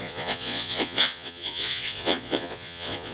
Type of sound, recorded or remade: remade